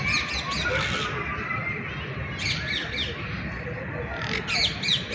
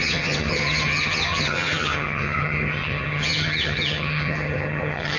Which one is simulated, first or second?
second